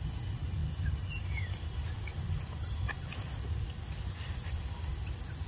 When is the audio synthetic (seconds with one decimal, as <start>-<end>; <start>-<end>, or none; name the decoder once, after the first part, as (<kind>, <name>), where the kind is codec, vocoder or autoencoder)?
0.0-5.5 (vocoder, BigVGAN v2)